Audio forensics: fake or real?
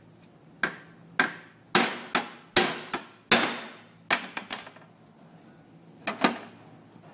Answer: real